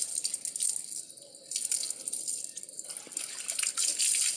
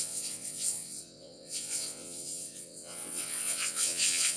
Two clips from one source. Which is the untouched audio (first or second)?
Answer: first